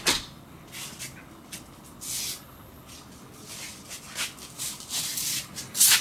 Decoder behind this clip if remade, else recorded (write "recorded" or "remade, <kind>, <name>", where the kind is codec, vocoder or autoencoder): recorded